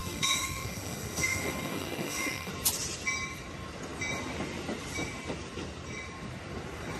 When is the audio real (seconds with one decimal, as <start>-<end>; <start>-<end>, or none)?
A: 2.5-7.0